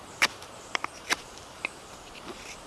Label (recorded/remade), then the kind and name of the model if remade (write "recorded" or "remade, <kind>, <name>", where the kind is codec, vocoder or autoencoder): remade, vocoder, BigVGAN v2